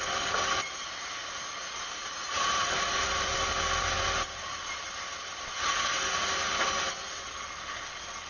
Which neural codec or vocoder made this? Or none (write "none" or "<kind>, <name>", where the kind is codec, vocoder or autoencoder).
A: none